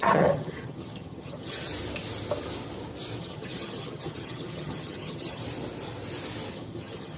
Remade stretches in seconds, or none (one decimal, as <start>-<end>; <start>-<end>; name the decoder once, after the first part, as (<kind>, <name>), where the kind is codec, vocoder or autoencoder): 0.0-1.7 (vocoder, HiFi-GAN); 3.2-5.4; 6.5-7.2